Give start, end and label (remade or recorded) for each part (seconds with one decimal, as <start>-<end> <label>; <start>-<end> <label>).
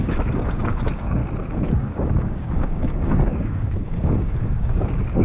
0.0-1.2 remade; 1.2-1.8 recorded; 1.8-5.2 remade